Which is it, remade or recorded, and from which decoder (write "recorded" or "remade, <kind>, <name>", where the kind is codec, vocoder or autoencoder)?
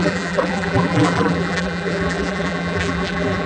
remade, vocoder, BigVGAN v2